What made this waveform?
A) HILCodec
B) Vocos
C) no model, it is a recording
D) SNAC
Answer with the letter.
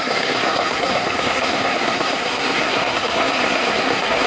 D